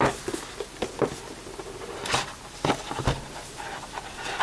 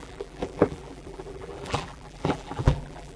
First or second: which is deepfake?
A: second